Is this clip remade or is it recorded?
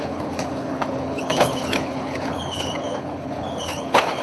remade